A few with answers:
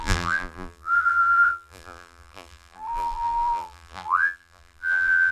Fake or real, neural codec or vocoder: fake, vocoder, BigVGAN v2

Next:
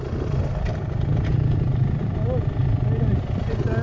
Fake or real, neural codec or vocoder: real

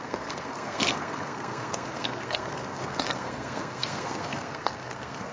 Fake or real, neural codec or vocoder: fake, codec, SNAC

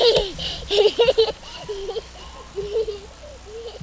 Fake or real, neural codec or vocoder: real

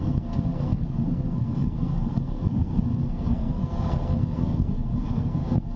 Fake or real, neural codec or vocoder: fake, codec, SNAC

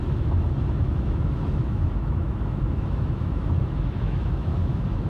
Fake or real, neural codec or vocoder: fake, autoencoder, DAC-VAE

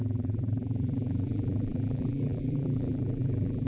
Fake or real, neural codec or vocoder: fake, vocoder, BigVGAN v2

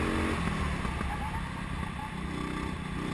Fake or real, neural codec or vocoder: real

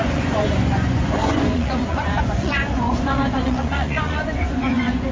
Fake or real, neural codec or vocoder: fake, vocoder, Vocos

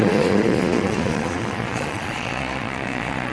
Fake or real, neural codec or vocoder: fake, vocoder, Vocos